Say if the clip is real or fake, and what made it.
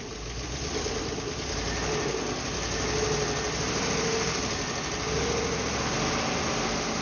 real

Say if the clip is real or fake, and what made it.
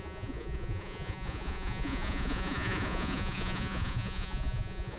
fake, vocoder, Vocos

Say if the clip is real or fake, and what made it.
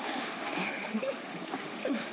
fake, autoencoder, DAC-VAE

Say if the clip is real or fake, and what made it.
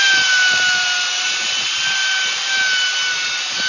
real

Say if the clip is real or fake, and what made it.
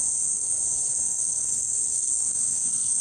fake, codec, SNAC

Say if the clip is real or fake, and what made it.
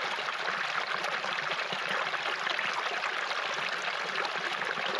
real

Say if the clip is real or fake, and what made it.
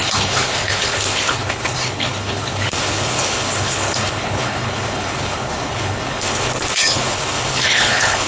fake, codec, HILCodec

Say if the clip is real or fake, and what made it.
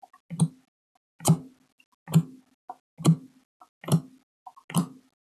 real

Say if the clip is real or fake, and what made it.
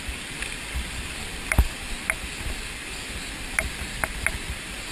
real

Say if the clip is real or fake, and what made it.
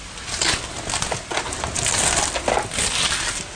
real